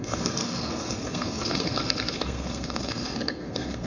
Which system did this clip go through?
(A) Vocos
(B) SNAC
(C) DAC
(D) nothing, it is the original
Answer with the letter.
B